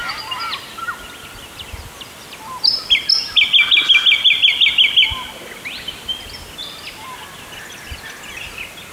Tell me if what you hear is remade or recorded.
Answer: recorded